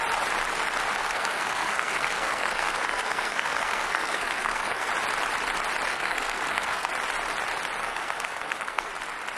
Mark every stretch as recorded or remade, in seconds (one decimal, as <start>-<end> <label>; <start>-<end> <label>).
0.0-1.0 recorded; 1.0-4.9 remade; 4.9-5.9 recorded; 5.9-6.9 remade; 6.9-7.8 recorded; 7.8-8.9 remade; 8.9-9.4 recorded